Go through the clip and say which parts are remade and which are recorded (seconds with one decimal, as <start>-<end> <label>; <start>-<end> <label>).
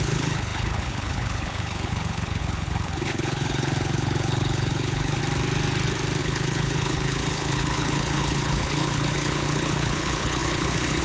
0.0-5.2 remade; 5.2-6.2 recorded; 6.2-11.0 remade